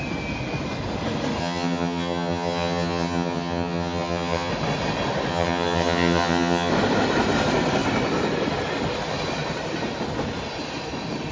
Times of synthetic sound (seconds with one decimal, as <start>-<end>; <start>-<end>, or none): 1.4-4.5; 5.3-6.7